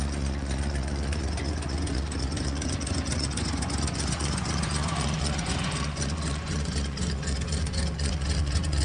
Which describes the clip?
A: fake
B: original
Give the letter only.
A